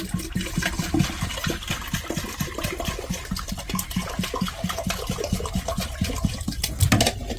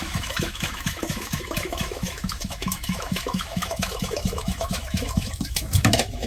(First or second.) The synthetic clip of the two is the second